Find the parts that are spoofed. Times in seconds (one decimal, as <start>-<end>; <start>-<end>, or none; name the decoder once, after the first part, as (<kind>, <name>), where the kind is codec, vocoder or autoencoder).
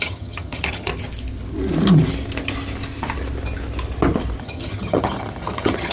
0.0-0.9 (vocoder, HiFi-GAN); 4.4-5.9